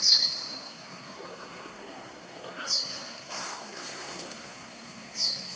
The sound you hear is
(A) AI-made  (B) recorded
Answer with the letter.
A